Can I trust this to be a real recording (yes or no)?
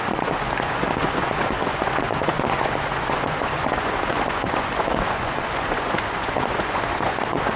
no